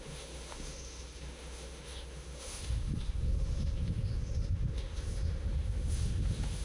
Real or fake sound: fake